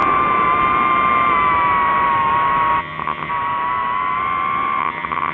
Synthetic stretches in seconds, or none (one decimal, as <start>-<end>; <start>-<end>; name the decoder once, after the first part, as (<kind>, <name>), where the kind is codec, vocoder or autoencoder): 2.8-3.3 (vocoder, HiFi-GAN); 4.8-5.3